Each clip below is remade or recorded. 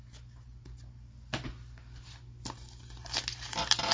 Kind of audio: recorded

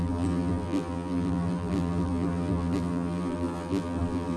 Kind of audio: remade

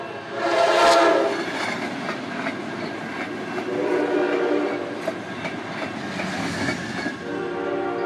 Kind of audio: recorded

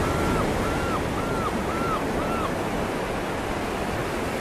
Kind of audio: recorded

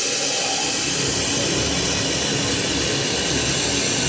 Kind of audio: recorded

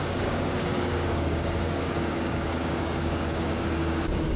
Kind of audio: remade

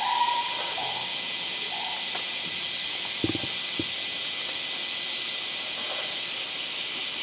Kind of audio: recorded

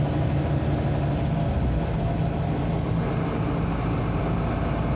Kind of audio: recorded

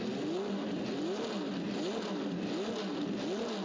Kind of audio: recorded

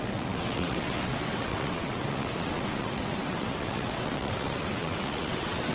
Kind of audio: remade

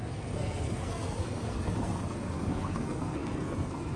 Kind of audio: remade